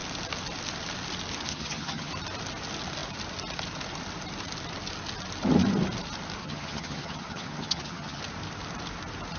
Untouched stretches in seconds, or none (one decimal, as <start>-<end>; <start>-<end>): 0.0-1.5; 2.1-6.4; 8.2-9.4